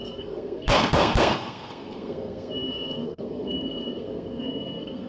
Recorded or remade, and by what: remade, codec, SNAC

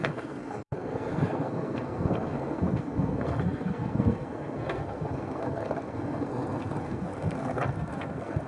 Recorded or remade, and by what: remade, codec, SNAC